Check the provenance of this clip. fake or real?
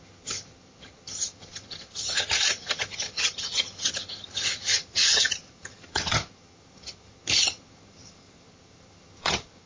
fake